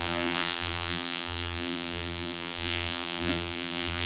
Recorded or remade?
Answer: remade